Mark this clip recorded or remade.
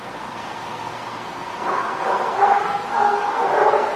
remade